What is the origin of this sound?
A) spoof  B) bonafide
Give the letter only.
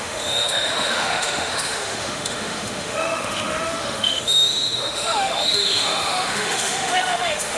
A